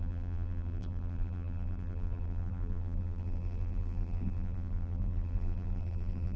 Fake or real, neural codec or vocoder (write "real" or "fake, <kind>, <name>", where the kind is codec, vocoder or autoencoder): fake, vocoder, BigVGAN v2